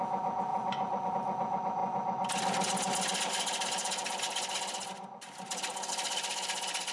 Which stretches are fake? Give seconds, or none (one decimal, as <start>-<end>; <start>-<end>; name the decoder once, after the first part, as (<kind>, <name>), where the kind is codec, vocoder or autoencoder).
0.5-1.1 (vocoder, Vocos)